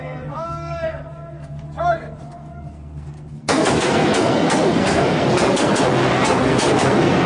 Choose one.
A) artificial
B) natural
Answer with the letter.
A